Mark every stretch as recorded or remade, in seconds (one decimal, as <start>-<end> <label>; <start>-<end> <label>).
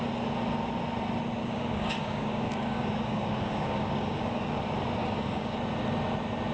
0.0-1.4 recorded; 1.4-4.6 remade; 4.6-5.0 recorded; 5.0-5.6 remade; 5.6-6.5 recorded